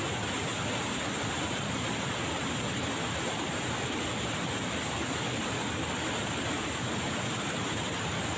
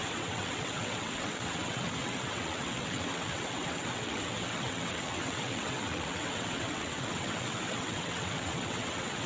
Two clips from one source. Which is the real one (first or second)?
first